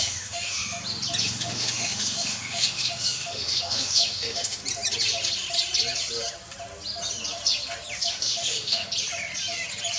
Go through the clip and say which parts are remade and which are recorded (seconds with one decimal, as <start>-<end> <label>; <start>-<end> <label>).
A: 0.0-0.6 remade; 0.6-1.2 recorded; 1.2-4.6 remade; 4.6-8.1 recorded; 8.1-8.8 remade; 8.8-10.0 recorded